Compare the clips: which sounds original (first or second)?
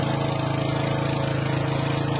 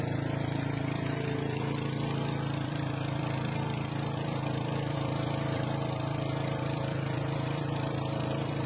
first